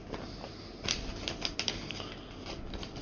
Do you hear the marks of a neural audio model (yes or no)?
no